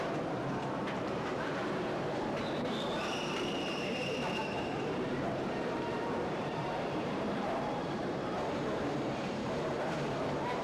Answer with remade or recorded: remade